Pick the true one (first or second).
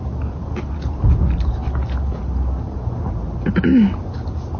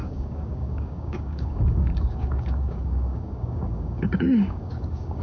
first